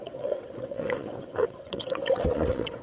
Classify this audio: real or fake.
fake